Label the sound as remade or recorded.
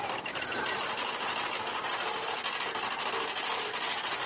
recorded